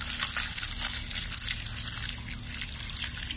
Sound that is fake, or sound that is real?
real